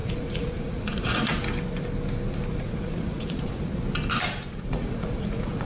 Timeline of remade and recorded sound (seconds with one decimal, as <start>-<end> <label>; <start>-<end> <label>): 0.0-1.3 remade; 1.3-2.5 recorded; 2.5-3.7 remade; 3.7-4.5 recorded; 4.5-5.7 remade